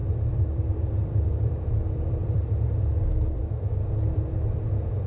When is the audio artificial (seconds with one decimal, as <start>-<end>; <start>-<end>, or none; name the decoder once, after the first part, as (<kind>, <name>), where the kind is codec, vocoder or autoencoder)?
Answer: 0.0-5.1 (vocoder, BigVGAN v2)